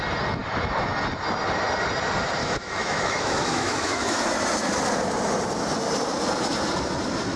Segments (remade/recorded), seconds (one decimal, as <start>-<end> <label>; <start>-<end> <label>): 0.0-2.4 recorded; 2.4-4.3 remade; 4.3-7.4 recorded